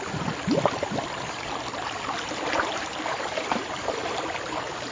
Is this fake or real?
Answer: real